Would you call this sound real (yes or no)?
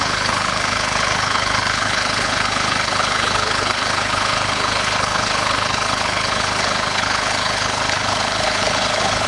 no